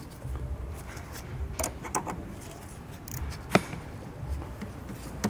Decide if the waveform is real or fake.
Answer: fake